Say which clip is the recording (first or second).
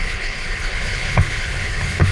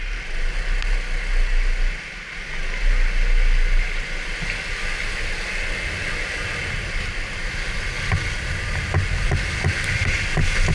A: second